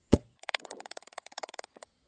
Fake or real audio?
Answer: fake